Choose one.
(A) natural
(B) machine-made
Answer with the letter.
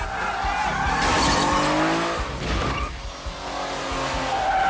A